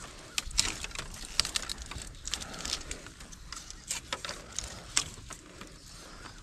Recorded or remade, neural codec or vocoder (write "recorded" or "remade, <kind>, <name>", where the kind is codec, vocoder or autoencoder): recorded